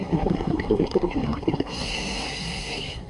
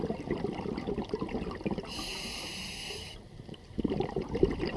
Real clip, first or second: second